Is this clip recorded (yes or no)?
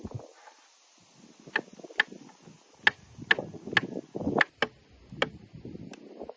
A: yes